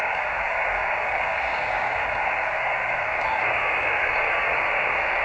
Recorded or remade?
remade